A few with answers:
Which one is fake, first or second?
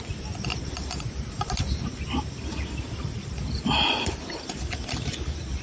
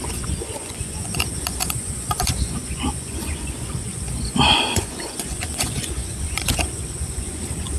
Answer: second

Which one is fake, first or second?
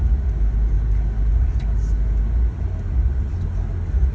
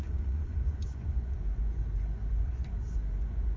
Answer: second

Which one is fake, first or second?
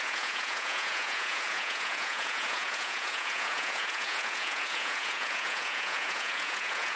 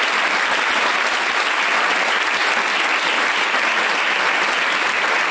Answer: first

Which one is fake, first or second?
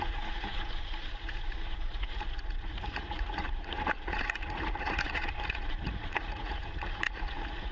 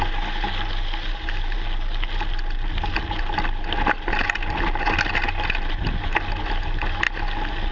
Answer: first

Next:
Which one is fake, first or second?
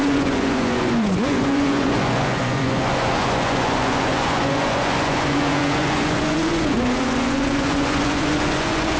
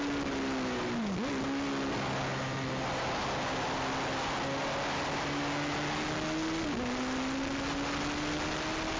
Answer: first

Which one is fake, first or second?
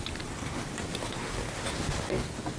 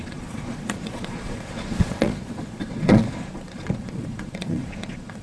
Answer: second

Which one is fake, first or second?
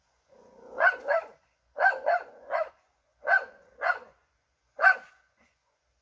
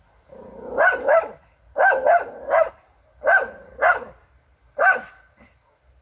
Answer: first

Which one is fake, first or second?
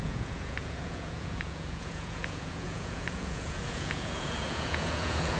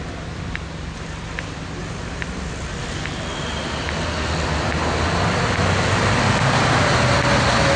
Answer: first